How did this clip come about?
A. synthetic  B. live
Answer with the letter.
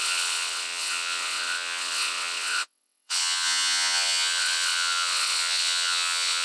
A